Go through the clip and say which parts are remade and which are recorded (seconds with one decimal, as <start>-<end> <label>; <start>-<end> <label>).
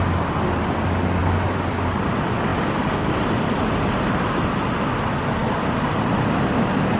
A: 0.0-7.0 recorded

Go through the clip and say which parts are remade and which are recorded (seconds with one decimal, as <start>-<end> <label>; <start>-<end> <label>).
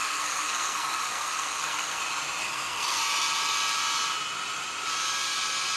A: 0.0-2.0 remade; 2.0-2.4 recorded; 2.4-3.0 remade; 3.0-5.8 recorded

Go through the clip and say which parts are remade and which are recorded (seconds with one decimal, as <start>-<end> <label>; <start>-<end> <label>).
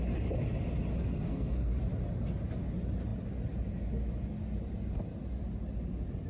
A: 0.0-1.0 recorded; 1.0-1.7 remade; 1.7-6.3 recorded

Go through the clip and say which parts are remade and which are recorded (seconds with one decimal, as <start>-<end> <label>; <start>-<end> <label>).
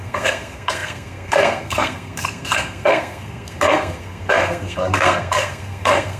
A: 0.0-6.2 remade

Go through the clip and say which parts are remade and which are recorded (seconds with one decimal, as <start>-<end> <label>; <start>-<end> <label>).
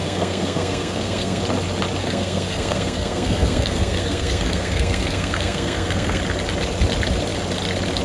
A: 0.0-1.4 remade; 1.4-2.0 recorded; 2.0-6.2 remade; 6.2-8.0 recorded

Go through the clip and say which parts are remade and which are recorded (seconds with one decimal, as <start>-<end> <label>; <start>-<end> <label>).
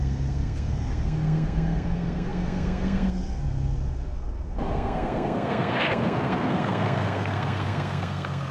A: 0.0-8.5 remade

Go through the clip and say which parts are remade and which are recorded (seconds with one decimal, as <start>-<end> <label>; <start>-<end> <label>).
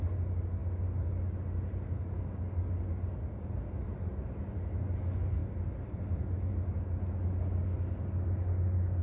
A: 0.0-9.0 recorded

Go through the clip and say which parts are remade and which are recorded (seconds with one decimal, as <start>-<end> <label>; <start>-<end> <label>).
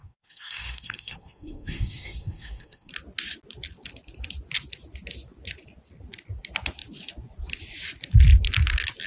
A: 0.0-2.9 remade; 2.9-9.1 recorded